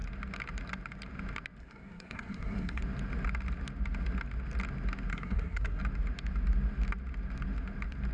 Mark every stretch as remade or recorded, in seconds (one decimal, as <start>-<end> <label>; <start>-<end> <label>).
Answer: 0.0-1.6 recorded; 1.6-2.8 remade; 2.8-5.1 recorded; 5.1-5.8 remade; 5.8-8.1 recorded